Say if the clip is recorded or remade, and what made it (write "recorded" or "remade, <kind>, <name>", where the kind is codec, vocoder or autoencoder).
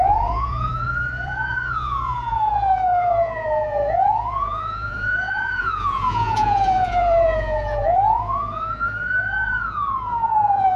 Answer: remade, vocoder, Vocos